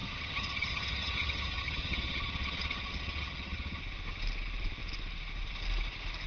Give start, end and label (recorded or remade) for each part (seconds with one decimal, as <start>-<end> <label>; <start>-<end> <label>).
0.0-3.8 remade; 3.8-6.3 recorded